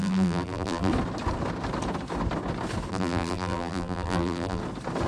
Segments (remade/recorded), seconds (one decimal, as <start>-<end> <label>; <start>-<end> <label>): 0.0-0.9 remade; 0.9-2.9 recorded; 2.9-4.6 remade; 4.6-5.1 recorded